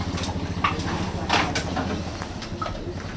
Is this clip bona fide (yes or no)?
yes